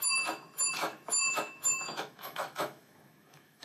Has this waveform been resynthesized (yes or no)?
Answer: yes